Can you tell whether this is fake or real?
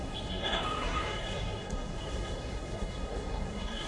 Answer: fake